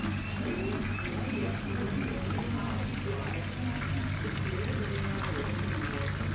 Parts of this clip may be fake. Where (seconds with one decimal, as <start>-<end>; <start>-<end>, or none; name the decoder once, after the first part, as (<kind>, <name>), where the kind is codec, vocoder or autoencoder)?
none